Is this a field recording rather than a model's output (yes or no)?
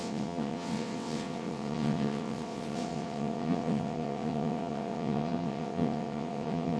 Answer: no